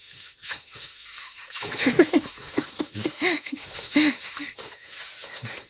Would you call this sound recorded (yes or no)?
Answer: no